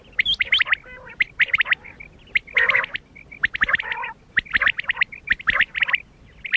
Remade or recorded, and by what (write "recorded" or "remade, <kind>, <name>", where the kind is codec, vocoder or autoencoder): recorded